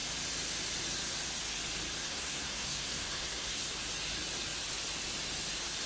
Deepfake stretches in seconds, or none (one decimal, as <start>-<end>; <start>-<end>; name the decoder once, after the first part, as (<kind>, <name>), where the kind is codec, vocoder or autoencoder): 2.0-3.7 (codec, SNAC)